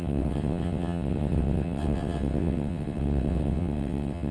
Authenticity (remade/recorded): remade